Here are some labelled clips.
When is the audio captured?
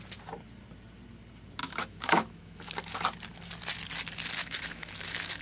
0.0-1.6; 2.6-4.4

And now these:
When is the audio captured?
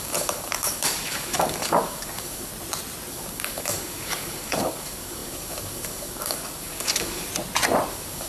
2.5-3.1; 7.3-7.9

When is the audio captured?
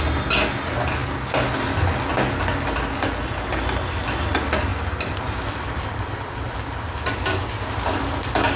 0.0-4.7; 6.3-8.6